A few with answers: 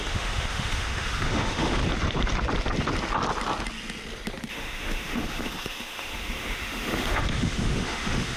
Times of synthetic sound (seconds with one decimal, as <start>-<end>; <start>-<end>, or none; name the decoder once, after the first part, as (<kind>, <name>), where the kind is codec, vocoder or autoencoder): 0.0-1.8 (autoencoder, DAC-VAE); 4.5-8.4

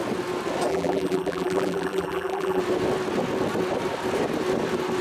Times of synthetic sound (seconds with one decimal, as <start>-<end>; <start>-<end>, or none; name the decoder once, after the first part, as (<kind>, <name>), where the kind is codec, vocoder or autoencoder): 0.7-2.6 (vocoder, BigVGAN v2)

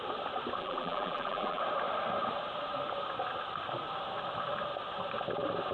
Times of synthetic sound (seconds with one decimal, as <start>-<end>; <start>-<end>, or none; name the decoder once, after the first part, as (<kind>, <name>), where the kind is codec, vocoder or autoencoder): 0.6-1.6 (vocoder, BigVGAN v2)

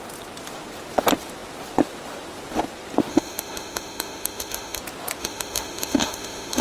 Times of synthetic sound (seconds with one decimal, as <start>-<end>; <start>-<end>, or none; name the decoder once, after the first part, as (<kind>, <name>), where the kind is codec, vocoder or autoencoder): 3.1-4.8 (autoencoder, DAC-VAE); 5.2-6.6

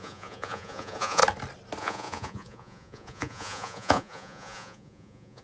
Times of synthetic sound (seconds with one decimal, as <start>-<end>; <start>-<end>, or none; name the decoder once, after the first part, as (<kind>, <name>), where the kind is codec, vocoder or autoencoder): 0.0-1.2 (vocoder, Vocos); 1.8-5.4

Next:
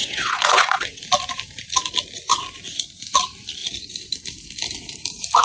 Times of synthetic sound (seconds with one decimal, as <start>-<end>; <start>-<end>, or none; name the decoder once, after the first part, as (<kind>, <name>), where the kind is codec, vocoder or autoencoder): 0.0-1.0 (vocoder, WaveNeXt)